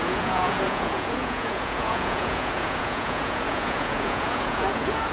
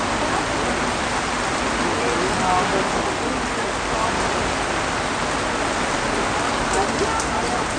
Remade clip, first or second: first